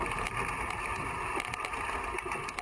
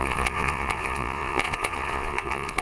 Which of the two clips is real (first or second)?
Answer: first